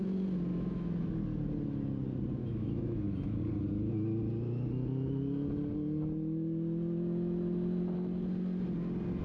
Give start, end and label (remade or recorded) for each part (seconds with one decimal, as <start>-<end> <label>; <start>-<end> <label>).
0.0-0.5 recorded; 0.5-1.1 remade; 1.1-2.4 recorded; 2.4-3.4 remade; 3.4-9.2 recorded